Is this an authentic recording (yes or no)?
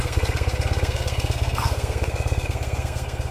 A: no